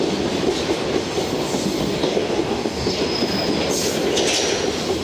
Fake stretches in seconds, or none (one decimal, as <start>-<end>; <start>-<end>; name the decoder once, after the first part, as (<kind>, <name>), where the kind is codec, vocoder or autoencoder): 2.0-3.0 (codec, DAC)